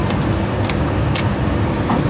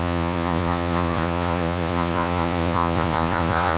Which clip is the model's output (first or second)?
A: second